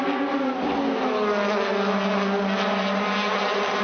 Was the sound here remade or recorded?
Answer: recorded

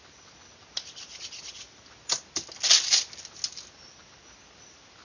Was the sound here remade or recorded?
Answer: recorded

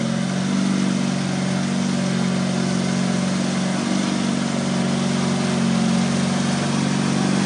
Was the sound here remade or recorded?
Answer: recorded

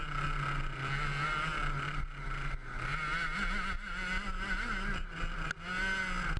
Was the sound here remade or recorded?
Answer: recorded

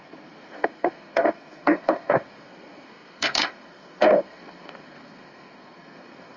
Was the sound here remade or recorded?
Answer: remade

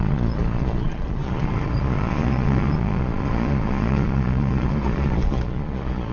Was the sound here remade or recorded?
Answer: remade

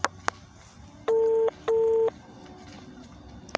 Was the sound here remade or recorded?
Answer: recorded